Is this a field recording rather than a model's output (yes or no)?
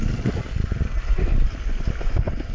yes